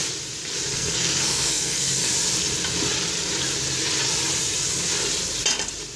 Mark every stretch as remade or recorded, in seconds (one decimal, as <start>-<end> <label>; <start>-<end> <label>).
0.0-0.7 recorded; 0.7-2.1 remade; 2.1-6.0 recorded